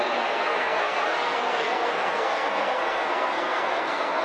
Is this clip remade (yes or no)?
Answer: yes